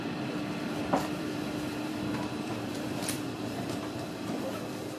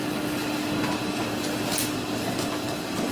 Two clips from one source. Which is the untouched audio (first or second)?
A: second